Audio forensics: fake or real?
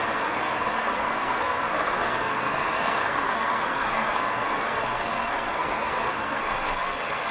fake